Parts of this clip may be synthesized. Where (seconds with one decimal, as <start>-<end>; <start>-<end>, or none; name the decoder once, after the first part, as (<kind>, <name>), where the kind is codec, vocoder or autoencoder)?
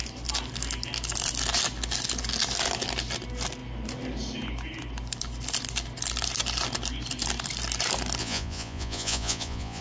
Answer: 8.2-9.8 (vocoder, Vocos)